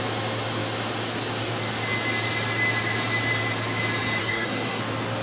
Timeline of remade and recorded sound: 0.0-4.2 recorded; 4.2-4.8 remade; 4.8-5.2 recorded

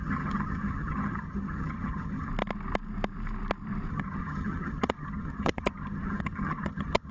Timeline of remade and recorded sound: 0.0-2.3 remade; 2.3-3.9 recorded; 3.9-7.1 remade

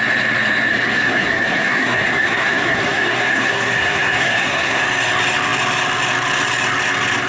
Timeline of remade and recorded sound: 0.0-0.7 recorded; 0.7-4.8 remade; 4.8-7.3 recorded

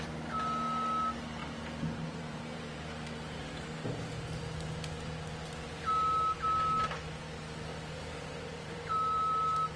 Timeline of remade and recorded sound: 0.0-1.4 recorded; 1.4-3.5 remade; 3.5-7.7 recorded; 7.7-9.8 remade

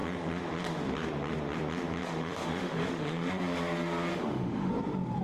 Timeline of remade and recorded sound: 0.0-2.0 recorded; 2.0-3.3 remade; 3.3-4.1 recorded; 4.1-4.7 remade; 4.7-5.2 recorded